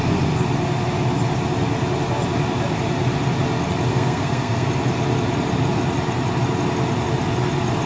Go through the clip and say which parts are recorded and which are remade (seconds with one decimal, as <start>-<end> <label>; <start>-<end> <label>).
0.0-3.9 recorded; 3.9-4.7 remade; 4.7-7.9 recorded